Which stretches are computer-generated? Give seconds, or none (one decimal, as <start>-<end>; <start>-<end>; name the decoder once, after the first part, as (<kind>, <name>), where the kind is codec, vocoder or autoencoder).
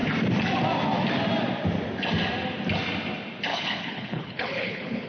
3.5-5.1 (codec, HILCodec)